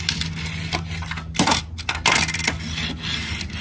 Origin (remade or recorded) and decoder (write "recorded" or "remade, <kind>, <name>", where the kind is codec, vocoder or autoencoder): recorded